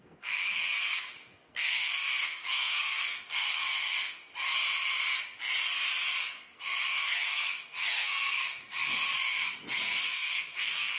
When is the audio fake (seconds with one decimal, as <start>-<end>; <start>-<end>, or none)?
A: 0.0-4.3; 6.2-11.0